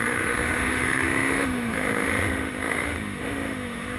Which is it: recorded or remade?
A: remade